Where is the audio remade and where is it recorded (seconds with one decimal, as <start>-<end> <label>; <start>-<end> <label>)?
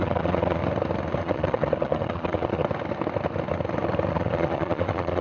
0.0-0.6 remade; 0.6-1.2 recorded; 1.2-2.6 remade; 2.6-4.1 recorded; 4.1-5.2 remade